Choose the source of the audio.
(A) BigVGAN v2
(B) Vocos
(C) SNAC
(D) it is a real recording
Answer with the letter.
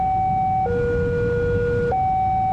D